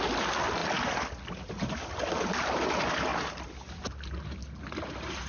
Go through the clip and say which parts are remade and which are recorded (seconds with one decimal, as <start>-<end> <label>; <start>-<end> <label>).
0.0-5.3 recorded